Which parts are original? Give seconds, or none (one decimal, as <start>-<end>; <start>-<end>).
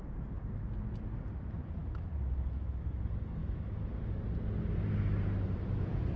0.0-1.8; 3.0-3.4; 4.2-6.2